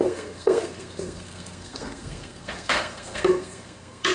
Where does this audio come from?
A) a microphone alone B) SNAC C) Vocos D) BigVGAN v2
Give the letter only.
B